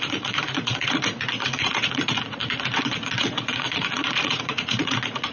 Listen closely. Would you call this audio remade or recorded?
remade